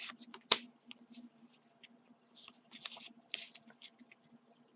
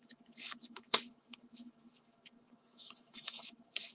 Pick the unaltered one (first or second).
first